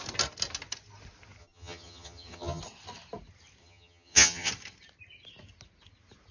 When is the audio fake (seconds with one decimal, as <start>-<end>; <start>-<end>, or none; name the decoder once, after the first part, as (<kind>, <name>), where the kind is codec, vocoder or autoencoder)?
1.4-2.6 (vocoder, HiFi-GAN); 3.6-4.5